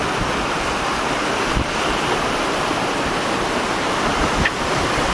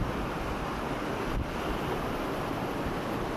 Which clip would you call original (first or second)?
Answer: second